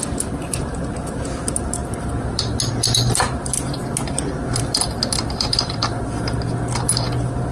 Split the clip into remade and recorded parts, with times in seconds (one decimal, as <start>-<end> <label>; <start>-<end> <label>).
0.0-7.5 recorded